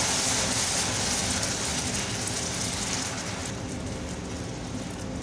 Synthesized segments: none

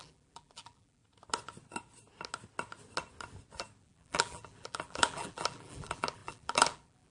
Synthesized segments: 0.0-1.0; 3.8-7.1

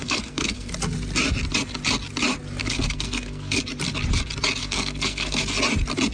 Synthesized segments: 0.0-0.7; 2.6-3.6; 4.6-5.4

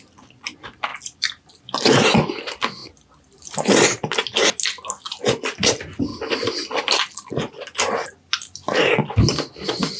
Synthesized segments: none

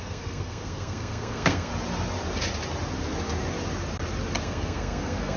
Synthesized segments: 0.0-1.7; 4.4-5.4

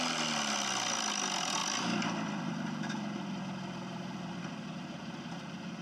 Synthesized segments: none

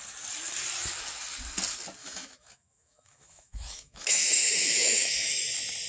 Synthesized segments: 2.0-5.5